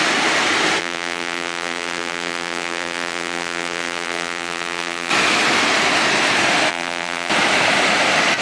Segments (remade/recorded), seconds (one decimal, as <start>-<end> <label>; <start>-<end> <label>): 0.0-0.8 recorded; 0.8-5.1 remade; 5.1-6.7 recorded; 6.7-7.3 remade; 7.3-8.4 recorded